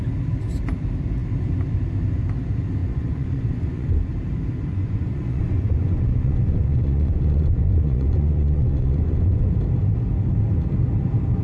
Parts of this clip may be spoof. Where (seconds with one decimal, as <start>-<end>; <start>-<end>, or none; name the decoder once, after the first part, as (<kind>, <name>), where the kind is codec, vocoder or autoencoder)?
2.8-4.1 (vocoder, Vocos); 4.7-9.5